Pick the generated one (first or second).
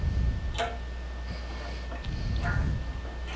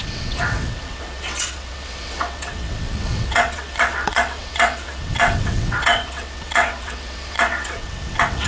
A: second